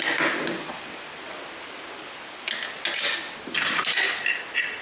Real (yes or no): yes